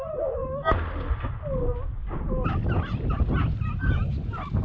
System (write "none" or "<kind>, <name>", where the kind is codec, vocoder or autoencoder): none